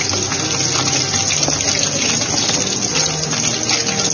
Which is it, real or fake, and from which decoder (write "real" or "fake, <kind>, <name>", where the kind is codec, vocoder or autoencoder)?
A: real